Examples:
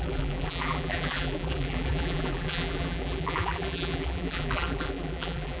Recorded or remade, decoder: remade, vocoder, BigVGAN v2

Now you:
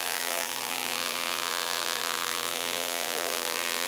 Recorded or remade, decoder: remade, vocoder, BigVGAN v2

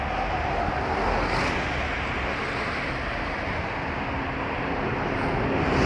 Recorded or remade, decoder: recorded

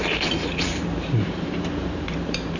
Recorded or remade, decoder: remade, vocoder, BigVGAN v2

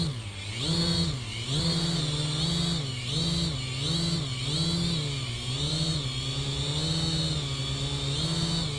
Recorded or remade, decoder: recorded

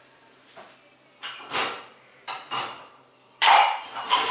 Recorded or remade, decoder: remade, vocoder, BigVGAN v2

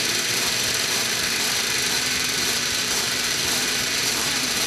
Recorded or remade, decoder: remade, vocoder, BigVGAN v2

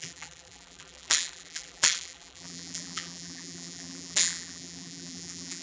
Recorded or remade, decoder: remade, vocoder, BigVGAN v2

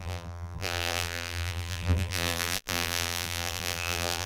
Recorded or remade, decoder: remade, vocoder, BigVGAN v2